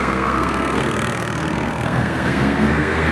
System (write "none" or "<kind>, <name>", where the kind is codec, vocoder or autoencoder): codec, SNAC